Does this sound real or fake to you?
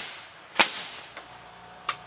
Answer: real